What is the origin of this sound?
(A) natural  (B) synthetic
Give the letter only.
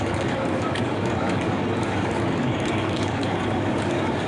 B